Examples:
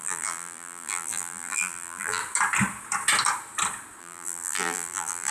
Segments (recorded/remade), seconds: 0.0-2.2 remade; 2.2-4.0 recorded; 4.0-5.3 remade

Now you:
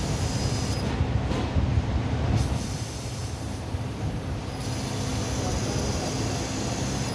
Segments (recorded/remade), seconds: 0.0-1.7 recorded; 1.7-2.5 remade; 2.5-3.2 recorded; 3.2-4.6 remade; 4.6-7.1 recorded